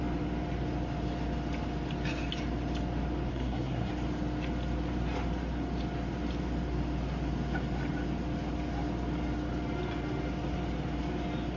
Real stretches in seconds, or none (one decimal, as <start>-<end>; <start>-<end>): 0.0-3.3; 3.9-11.6